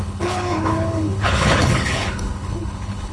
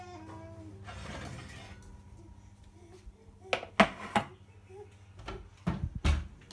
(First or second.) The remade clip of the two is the first